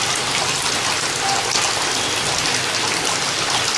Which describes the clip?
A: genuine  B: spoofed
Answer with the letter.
A